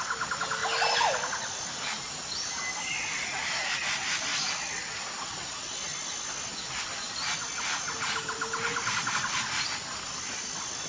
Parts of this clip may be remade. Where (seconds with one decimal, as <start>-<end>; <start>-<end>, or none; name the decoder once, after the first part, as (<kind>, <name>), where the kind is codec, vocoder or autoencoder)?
none